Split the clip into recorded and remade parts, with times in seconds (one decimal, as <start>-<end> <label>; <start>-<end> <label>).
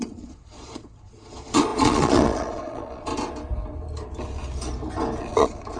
0.0-3.1 remade; 3.1-5.2 recorded; 5.2-5.8 remade